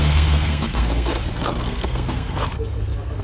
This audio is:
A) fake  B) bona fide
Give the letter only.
A